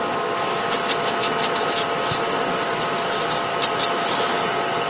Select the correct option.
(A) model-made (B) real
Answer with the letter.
B